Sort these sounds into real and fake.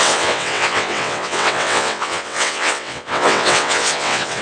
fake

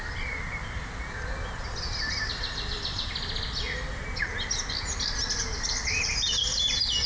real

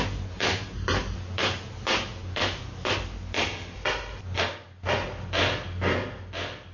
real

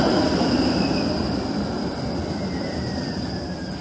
fake